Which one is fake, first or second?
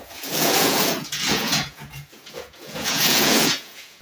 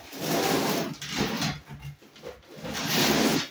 first